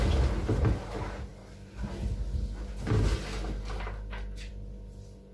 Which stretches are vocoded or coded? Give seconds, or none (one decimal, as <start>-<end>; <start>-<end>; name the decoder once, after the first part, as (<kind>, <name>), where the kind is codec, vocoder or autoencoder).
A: none